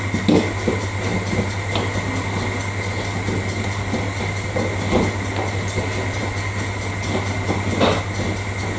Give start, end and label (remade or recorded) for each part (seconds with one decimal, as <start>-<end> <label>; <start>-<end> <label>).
0.0-8.8 recorded